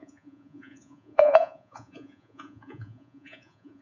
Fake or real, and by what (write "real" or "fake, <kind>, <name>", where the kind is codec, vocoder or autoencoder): fake, vocoder, Vocos